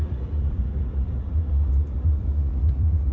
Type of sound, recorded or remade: remade